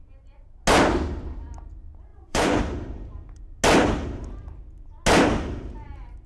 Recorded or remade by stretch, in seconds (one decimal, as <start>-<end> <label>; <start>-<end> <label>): 0.0-2.1 recorded; 2.1-2.6 remade; 2.6-6.3 recorded